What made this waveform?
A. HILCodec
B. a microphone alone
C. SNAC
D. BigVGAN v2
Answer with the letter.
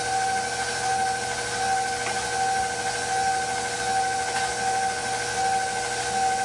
B